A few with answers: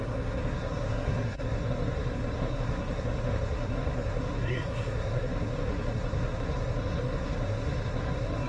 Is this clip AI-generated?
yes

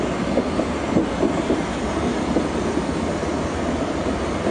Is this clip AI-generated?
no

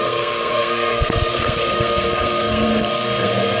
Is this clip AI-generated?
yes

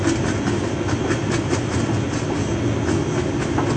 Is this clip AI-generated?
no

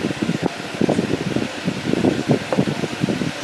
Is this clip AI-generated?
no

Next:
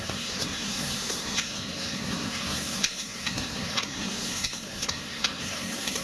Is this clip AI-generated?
yes